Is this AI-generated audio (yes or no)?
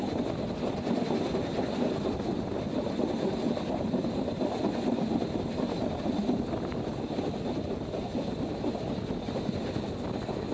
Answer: no